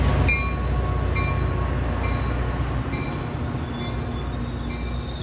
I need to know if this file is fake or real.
real